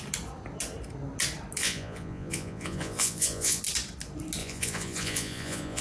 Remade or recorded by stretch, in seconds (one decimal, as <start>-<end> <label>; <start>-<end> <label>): 0.0-1.6 recorded; 1.6-3.6 remade; 3.6-4.4 recorded; 4.4-5.8 remade